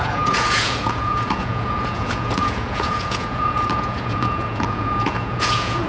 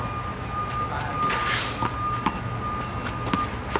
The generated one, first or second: first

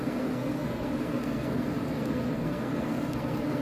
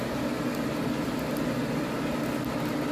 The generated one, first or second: first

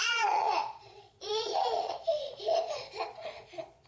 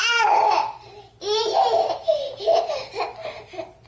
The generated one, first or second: first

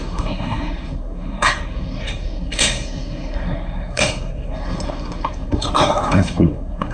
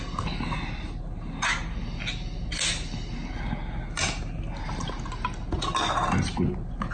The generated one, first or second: first